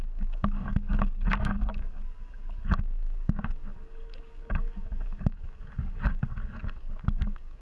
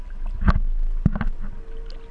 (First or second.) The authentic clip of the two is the second